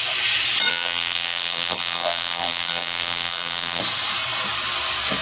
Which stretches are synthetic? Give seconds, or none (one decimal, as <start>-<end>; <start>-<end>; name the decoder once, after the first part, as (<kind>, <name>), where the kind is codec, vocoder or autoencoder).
0.7-3.8 (vocoder, BigVGAN v2)